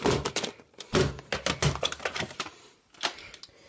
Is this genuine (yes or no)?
yes